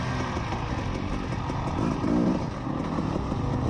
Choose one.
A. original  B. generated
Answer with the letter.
A